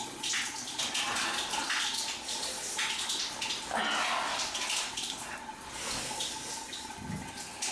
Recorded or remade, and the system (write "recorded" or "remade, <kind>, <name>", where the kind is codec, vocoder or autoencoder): recorded